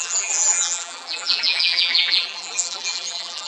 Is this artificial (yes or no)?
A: yes